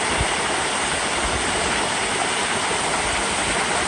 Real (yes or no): yes